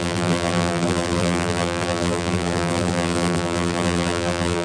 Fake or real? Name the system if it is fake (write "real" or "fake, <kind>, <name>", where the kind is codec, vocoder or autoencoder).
fake, vocoder, BigVGAN v2